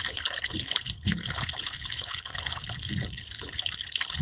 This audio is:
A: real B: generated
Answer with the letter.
B